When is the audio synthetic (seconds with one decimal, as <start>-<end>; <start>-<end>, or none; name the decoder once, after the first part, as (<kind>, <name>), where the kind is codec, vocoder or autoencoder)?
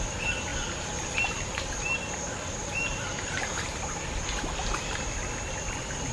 3.1-3.6 (vocoder, BigVGAN v2)